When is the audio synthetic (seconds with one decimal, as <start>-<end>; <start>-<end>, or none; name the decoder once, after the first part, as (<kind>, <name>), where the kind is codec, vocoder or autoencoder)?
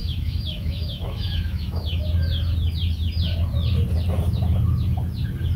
0.0-2.0 (autoencoder, DAC-VAE)